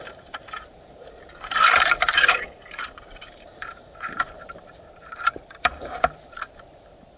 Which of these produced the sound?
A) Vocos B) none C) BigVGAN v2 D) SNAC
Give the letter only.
C